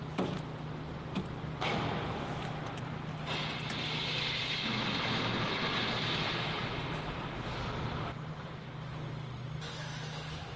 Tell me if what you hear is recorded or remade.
recorded